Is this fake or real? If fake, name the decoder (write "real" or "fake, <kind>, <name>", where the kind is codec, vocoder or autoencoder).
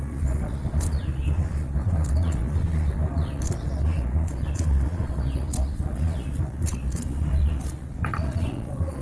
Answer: fake, vocoder, Vocos